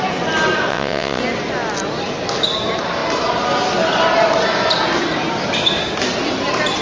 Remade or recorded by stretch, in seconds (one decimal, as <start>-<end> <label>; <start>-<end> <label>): 0.0-0.7 recorded; 0.7-1.2 remade; 1.2-6.8 recorded